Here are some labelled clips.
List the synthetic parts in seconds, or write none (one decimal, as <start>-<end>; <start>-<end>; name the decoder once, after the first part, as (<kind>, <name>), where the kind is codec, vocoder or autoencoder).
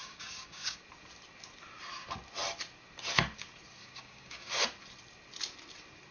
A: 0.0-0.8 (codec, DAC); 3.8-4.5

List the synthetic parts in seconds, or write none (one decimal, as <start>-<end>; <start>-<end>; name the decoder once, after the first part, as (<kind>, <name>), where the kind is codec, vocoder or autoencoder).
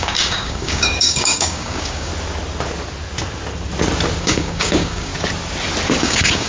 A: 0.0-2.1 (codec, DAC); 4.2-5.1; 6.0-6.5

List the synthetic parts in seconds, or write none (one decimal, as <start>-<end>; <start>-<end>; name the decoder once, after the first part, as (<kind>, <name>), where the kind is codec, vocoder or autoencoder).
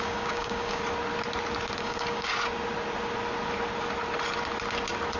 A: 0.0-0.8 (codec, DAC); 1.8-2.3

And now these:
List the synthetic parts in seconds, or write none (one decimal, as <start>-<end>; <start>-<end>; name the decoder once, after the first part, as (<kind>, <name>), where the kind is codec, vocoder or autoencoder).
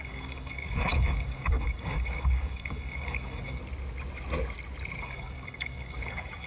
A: 0.0-3.6 (codec, DAC); 5.0-6.5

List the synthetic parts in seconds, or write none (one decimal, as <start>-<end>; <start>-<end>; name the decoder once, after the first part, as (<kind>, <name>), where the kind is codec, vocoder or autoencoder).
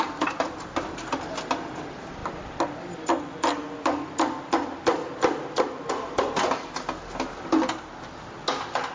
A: none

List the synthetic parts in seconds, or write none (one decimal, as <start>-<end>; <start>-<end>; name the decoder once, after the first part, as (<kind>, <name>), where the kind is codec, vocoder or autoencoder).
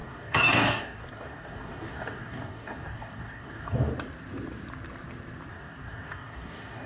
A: 0.0-3.9 (codec, DAC); 5.5-6.9